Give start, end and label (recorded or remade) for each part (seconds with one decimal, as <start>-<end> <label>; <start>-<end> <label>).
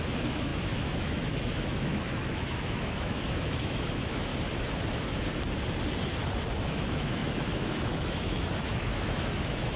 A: 0.0-4.3 remade; 4.3-6.6 recorded; 6.6-9.8 remade